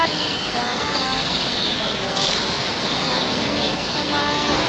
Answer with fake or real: fake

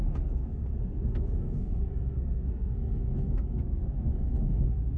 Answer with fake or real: fake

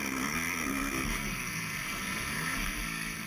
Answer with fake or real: fake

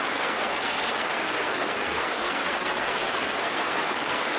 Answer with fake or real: fake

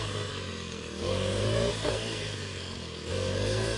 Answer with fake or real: fake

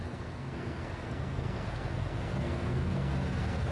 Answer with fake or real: fake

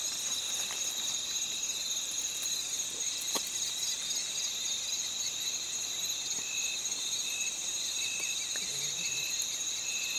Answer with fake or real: real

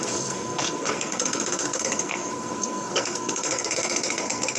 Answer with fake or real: fake